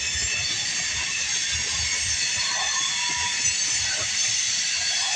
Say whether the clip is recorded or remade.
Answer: recorded